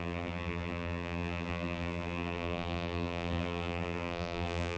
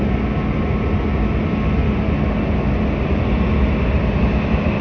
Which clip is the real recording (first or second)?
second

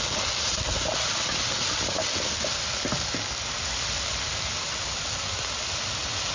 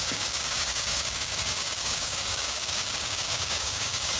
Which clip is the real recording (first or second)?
first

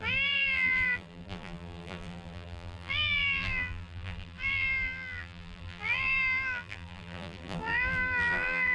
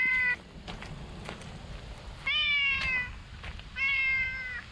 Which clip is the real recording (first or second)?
second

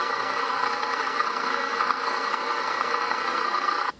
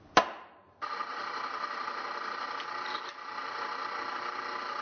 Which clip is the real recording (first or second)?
second